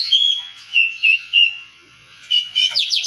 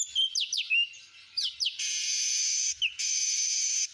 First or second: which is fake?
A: first